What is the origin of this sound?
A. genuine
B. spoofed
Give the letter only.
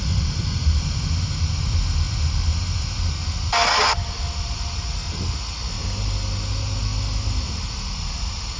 A